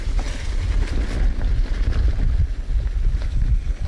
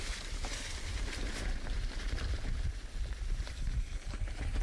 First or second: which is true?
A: first